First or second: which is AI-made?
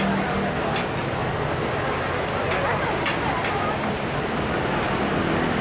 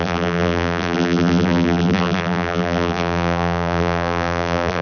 second